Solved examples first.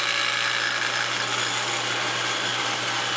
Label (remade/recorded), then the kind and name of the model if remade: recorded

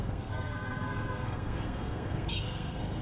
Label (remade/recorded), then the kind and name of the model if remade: remade, codec, SNAC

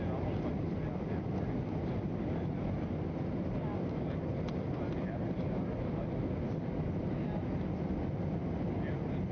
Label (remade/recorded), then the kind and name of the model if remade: recorded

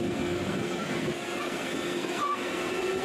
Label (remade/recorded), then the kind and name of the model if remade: remade, codec, SNAC